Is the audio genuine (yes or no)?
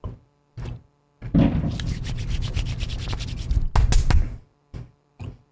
yes